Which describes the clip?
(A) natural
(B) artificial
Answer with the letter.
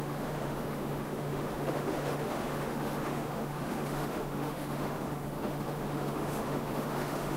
B